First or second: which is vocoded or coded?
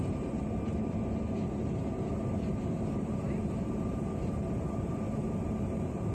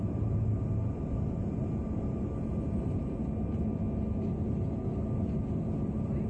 first